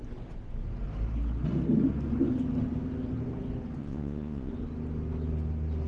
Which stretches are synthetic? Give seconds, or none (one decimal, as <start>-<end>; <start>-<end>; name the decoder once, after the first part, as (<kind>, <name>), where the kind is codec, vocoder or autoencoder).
3.8-4.5 (vocoder, Vocos)